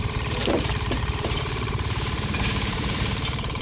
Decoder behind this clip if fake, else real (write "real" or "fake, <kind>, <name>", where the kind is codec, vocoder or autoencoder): fake, vocoder, BigVGAN v2